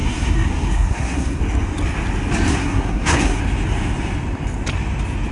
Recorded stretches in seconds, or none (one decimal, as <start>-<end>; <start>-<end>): 1.4-2.5; 3.4-5.3